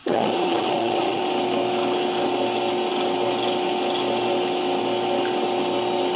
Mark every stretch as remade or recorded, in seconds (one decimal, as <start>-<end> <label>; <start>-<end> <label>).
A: 0.0-1.2 remade; 1.2-6.2 recorded